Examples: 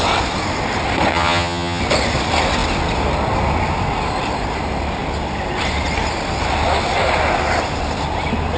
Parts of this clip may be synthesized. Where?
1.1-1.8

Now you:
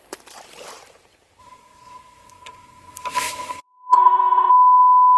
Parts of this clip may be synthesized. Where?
1.4-4.5

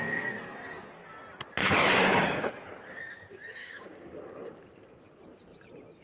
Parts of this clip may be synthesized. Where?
1.6-2.5; 3.6-4.2

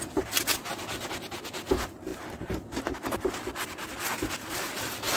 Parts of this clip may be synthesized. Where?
none